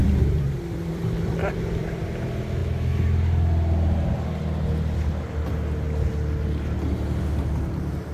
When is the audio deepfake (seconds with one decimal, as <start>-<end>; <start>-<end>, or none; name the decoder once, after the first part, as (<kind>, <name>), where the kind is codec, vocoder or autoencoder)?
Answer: 0.0-2.0 (vocoder, BigVGAN v2)